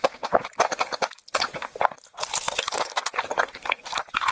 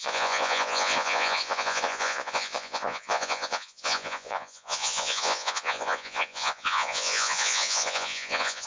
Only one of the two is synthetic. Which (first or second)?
second